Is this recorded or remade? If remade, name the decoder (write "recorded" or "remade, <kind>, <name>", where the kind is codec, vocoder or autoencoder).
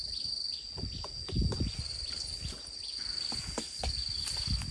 recorded